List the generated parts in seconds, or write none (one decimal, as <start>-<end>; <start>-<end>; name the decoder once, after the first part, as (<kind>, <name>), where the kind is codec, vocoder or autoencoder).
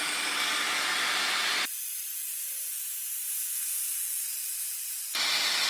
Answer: none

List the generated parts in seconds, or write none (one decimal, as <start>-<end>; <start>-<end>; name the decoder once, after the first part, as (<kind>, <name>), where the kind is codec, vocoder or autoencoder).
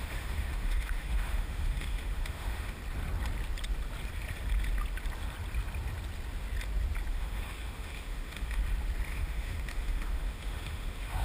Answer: 0.0-2.8 (autoencoder, DAC-VAE); 7.1-8.6; 9.1-11.2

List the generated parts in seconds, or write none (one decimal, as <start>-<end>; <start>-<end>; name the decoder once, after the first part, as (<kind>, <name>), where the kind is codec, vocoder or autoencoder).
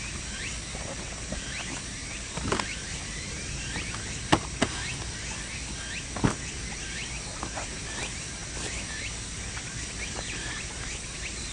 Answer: 2.0-3.6 (vocoder, BigVGAN v2); 7.3-7.9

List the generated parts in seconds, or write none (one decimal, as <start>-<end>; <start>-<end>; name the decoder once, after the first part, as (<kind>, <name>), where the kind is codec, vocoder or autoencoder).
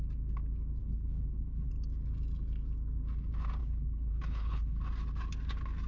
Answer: 0.8-1.7 (codec, HILCodec); 3.6-4.8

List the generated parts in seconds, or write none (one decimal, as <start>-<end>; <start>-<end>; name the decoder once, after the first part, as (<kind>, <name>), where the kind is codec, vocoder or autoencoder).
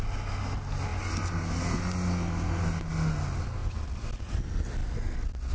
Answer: none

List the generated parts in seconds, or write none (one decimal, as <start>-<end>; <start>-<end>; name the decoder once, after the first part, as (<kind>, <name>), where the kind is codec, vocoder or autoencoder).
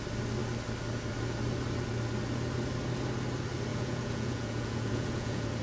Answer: 3.7-5.6 (vocoder, Vocos)